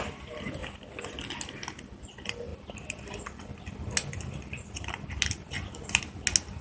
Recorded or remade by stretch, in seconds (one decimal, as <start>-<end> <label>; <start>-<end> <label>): 0.0-6.6 recorded